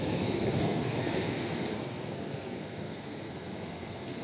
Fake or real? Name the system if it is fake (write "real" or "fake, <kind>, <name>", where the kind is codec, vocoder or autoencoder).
fake, codec, SNAC